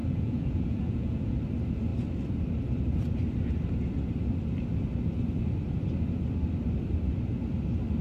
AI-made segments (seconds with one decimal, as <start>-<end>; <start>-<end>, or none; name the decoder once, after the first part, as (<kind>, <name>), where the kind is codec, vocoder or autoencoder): 0.0-1.3 (vocoder, Vocos)